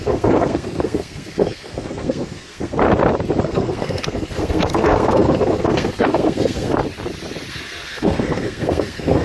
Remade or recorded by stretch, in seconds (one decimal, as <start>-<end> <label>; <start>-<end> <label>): 0.0-2.8 remade; 2.8-3.4 recorded; 3.4-6.8 remade; 6.8-7.5 recorded; 7.5-9.2 remade